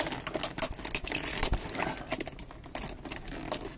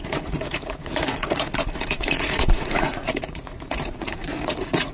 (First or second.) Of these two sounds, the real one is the first